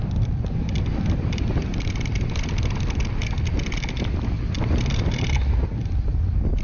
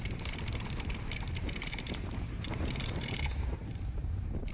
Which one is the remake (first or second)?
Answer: second